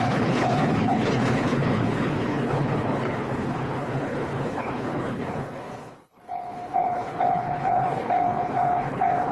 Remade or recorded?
remade